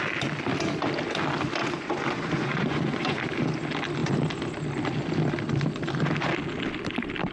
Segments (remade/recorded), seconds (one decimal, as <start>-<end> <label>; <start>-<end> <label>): 0.0-1.6 recorded; 1.6-3.2 remade; 3.2-7.3 recorded